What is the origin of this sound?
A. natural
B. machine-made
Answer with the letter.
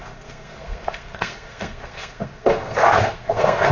B